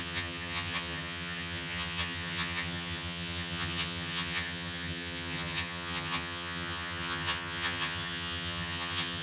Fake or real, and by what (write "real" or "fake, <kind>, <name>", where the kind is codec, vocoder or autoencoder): fake, vocoder, HiFi-GAN